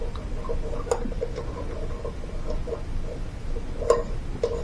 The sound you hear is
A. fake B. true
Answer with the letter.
B